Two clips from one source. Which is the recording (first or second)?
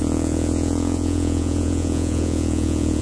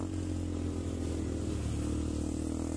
second